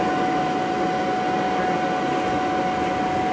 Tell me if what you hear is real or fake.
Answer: real